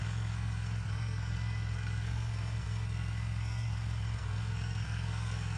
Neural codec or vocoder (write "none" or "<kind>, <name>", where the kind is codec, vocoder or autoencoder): codec, SNAC